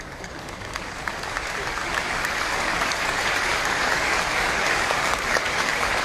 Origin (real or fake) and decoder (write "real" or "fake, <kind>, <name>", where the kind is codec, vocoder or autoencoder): fake, codec, DAC